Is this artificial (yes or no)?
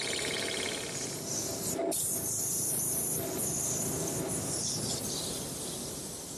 no